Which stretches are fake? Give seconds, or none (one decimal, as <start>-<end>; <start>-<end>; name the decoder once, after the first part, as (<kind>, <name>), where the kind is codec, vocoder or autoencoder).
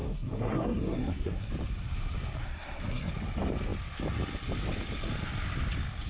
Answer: 0.0-1.5 (codec, SNAC); 2.4-3.1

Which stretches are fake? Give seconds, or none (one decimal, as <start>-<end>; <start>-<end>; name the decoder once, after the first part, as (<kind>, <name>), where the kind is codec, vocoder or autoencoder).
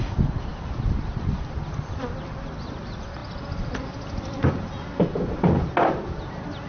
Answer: none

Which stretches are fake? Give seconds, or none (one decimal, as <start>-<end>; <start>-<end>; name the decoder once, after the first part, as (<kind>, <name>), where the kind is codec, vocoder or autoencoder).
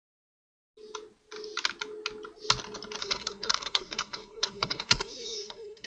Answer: 0.0-0.5 (codec, SNAC); 3.0-5.9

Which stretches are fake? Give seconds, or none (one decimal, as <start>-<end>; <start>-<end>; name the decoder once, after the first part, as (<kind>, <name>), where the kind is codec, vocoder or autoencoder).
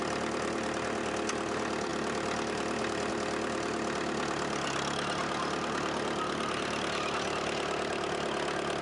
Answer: none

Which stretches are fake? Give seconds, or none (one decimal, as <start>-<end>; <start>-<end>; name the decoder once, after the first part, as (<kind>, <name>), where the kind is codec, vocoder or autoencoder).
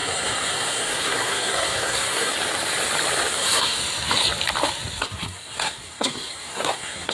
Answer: 0.0-2.3 (codec, SNAC); 3.3-3.8; 5.0-7.1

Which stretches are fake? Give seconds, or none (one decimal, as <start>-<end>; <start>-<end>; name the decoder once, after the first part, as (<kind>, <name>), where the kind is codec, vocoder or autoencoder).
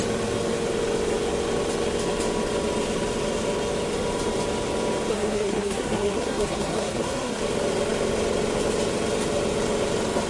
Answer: 5.1-7.4 (codec, SNAC)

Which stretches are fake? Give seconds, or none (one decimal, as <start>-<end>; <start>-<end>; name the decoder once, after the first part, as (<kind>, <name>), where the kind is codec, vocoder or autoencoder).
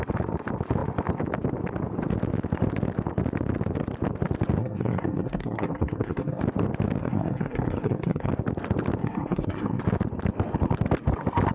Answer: 4.6-6.4 (codec, SNAC); 7.0-8.3; 9.0-9.8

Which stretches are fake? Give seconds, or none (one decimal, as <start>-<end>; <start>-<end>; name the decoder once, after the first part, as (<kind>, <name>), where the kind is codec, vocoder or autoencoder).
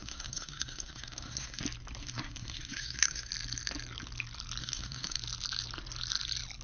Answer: 0.0-1.6 (codec, SNAC); 2.0-3.3; 4.6-5.2